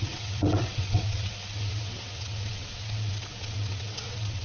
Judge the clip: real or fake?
fake